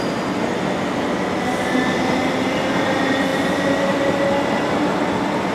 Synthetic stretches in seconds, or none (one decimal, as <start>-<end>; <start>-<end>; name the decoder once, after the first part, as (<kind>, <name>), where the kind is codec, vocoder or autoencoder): none